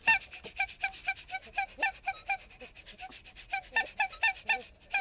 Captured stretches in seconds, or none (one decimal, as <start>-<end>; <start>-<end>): 0.0-5.0